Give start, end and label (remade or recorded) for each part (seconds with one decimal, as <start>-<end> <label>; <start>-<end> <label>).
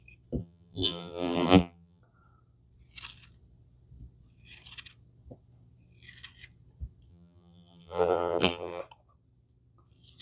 0.0-0.4 recorded; 0.4-2.0 remade; 2.0-7.1 recorded; 7.1-8.8 remade; 8.8-10.2 recorded